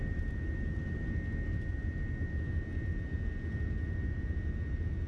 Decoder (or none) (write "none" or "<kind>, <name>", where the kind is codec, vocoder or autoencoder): none